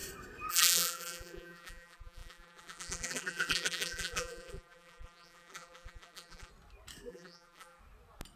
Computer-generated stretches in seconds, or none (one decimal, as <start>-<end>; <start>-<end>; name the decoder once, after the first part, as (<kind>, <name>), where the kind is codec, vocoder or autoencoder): 0.5-6.5 (vocoder, BigVGAN v2); 7.1-7.8